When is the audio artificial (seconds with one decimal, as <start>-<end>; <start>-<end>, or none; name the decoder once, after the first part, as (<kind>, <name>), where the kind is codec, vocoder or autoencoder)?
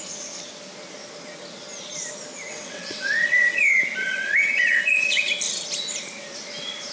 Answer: 2.5-3.6 (vocoder, WaveNeXt); 4.0-5.3